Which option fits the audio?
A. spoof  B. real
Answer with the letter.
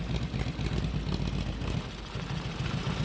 B